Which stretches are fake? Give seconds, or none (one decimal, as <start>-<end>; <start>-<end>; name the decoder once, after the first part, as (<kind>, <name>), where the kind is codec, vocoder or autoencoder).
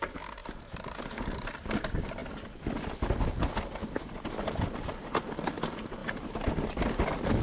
0.4-1.0 (vocoder, BigVGAN v2); 6.0-6.8